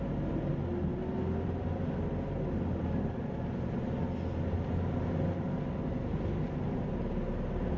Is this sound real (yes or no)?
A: yes